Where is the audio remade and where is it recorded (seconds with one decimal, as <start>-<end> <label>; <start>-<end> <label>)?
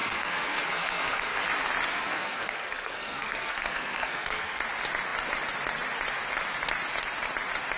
0.0-1.4 remade; 1.4-1.9 recorded; 1.9-4.6 remade; 4.6-7.8 recorded